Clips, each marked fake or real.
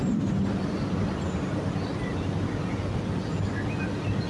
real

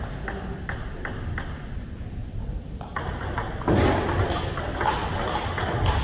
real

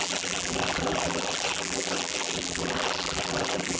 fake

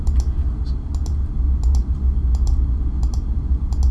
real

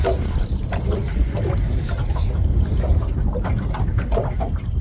real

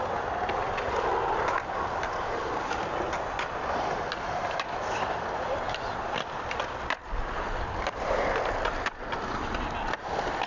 real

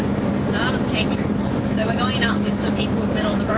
real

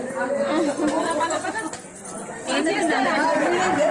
real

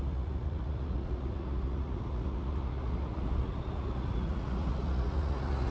fake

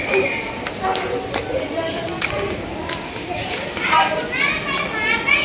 real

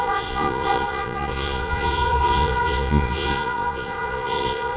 fake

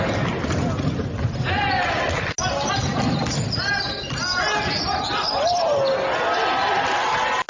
real